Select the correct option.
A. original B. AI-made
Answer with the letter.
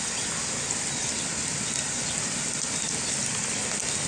A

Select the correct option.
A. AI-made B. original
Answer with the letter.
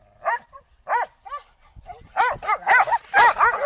B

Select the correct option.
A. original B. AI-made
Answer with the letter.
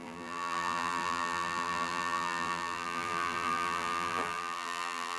B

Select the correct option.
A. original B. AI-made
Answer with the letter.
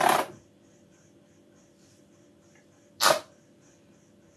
B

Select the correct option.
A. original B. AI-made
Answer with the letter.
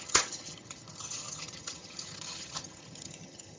B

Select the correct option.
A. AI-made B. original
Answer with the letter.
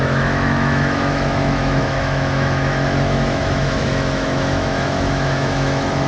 A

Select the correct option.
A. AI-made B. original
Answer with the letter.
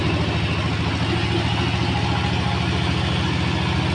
B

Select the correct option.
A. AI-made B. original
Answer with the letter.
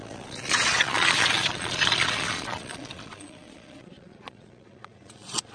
A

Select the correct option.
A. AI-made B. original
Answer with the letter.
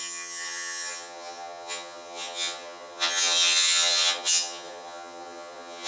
A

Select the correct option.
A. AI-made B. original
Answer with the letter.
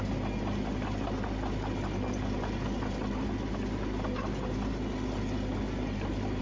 B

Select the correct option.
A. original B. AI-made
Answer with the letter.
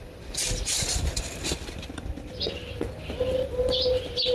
A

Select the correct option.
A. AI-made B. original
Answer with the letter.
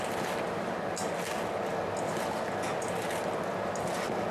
B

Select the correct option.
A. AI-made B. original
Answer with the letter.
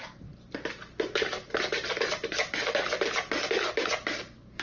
B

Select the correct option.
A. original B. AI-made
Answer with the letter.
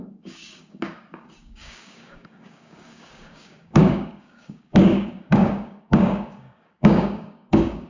B